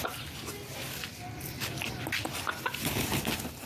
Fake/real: real